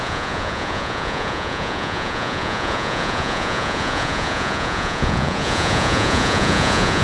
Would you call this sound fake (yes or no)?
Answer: yes